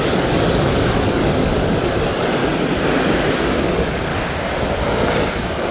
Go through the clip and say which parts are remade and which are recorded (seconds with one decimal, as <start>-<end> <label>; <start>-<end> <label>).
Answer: 0.0-2.4 remade; 2.4-3.6 recorded; 3.6-4.1 remade; 4.1-5.2 recorded; 5.2-5.7 remade